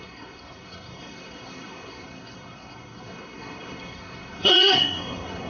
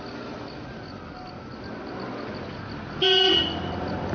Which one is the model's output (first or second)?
first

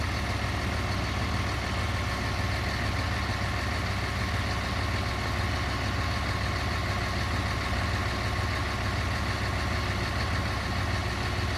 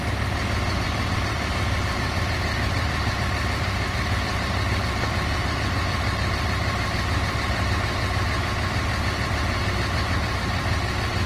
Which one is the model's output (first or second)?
second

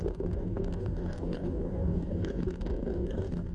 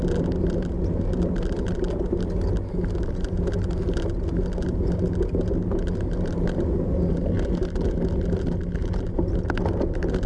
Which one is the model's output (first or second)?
first